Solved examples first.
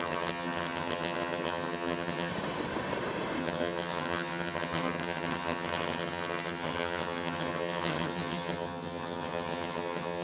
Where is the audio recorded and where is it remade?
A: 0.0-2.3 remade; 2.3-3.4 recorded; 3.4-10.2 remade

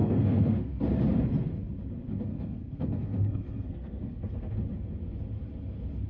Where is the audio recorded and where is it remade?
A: 0.0-0.8 remade; 0.8-2.3 recorded; 2.3-4.5 remade; 4.5-6.1 recorded

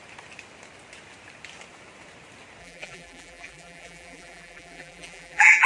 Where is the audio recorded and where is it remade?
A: 0.0-2.6 recorded; 2.6-5.7 remade

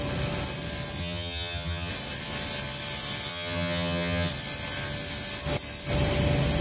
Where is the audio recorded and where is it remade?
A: 0.0-1.0 recorded; 1.0-1.9 remade; 1.9-3.3 recorded; 3.3-4.3 remade; 4.3-6.6 recorded

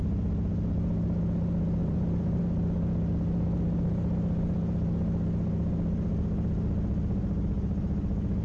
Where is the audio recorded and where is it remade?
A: 0.0-1.8 recorded; 1.8-2.4 remade; 2.4-8.4 recorded